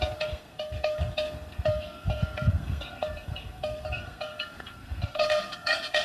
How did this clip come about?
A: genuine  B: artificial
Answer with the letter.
B